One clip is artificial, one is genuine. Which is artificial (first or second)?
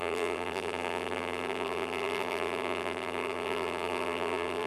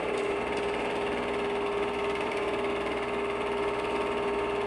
first